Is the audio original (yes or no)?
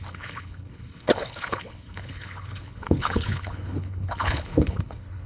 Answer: no